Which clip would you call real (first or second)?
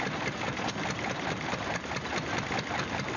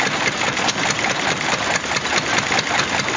second